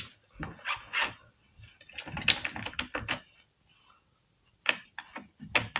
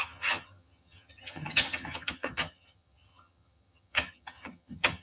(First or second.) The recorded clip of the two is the first